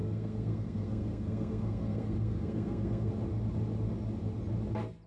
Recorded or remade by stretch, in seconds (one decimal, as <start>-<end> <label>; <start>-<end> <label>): 0.0-3.1 remade; 3.1-5.1 recorded